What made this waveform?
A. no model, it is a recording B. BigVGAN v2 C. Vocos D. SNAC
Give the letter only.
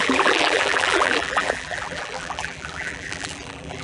B